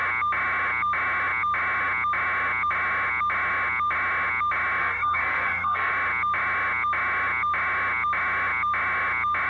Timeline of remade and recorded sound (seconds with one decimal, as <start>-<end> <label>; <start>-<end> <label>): 0.0-4.8 recorded; 4.8-5.9 remade; 5.9-9.5 recorded